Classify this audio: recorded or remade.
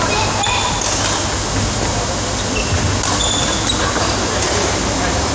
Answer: recorded